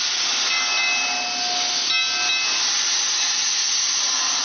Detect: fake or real real